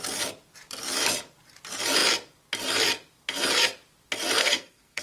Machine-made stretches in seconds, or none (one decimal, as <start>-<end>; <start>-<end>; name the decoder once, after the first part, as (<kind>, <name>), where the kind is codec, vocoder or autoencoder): 4.4-5.0 (codec, SNAC)